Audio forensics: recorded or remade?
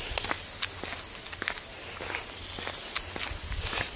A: recorded